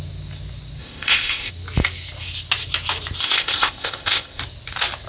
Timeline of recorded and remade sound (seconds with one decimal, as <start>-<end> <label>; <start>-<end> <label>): 0.0-0.8 recorded; 0.8-1.5 remade; 1.5-3.2 recorded; 3.2-4.4 remade; 4.4-5.1 recorded